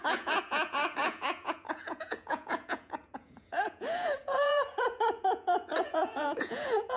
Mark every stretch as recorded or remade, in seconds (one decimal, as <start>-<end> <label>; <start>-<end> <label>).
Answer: 0.0-7.0 remade